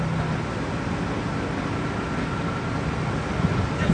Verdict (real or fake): real